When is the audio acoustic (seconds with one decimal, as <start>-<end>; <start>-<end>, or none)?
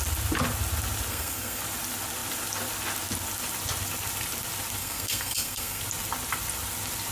0.0-1.1; 1.6-4.8; 5.8-7.1